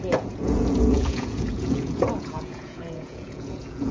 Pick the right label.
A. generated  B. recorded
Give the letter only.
A